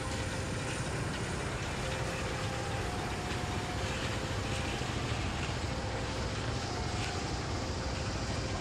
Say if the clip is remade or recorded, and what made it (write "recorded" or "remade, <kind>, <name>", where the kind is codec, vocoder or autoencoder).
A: recorded